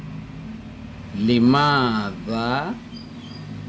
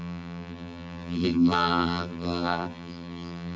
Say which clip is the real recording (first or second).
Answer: first